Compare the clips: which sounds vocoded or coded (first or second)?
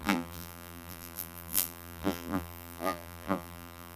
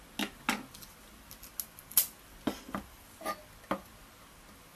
first